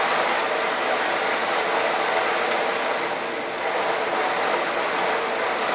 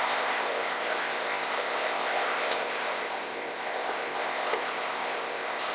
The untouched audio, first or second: first